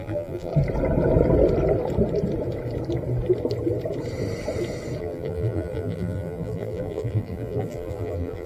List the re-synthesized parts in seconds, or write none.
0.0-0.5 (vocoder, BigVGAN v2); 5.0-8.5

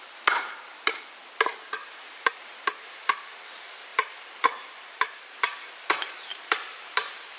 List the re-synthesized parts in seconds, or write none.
0.0-1.2 (vocoder, BigVGAN v2); 2.1-7.4